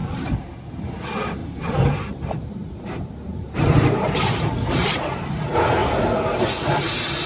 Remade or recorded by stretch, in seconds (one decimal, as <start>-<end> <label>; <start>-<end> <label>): 0.0-1.4 recorded; 1.4-4.4 remade; 4.4-7.3 recorded